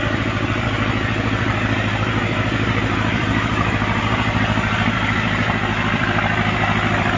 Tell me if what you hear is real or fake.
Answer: fake